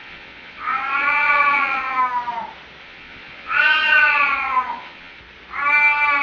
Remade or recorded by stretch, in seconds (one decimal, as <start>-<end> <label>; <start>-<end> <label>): 0.0-2.0 remade; 2.0-2.8 recorded; 2.8-5.2 remade; 5.2-6.2 recorded